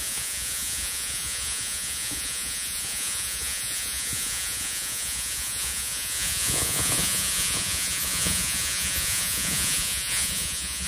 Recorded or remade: remade